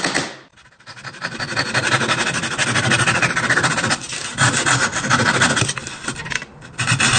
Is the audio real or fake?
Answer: real